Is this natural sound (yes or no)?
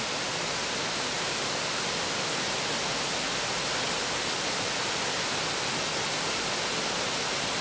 yes